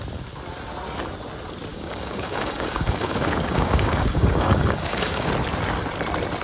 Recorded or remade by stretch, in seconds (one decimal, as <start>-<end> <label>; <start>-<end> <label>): 0.0-1.7 recorded; 1.7-5.3 remade; 5.3-6.4 recorded